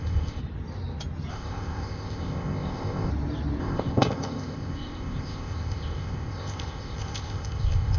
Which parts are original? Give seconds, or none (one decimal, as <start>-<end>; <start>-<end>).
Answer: 0.4-1.3; 3.1-3.6